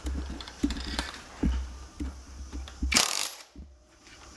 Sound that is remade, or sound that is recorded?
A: remade